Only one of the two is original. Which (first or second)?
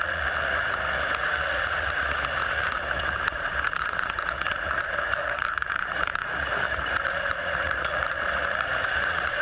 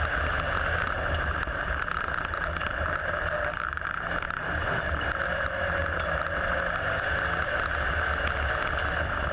second